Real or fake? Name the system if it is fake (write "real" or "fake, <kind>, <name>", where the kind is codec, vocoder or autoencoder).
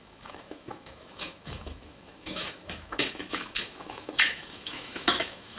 fake, autoencoder, DAC-VAE